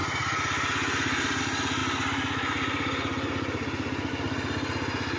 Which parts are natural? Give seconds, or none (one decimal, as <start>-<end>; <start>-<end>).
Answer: 0.0-5.2